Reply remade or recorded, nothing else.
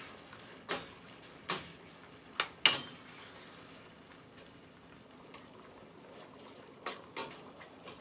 recorded